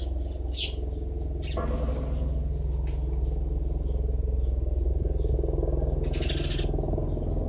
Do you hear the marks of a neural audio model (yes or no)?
no